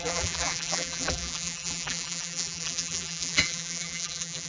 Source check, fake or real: fake